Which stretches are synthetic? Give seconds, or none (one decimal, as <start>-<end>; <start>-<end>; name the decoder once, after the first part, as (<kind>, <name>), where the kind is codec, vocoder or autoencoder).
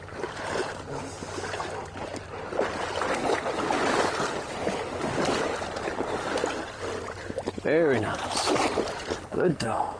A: 9.3-10.0 (codec, SNAC)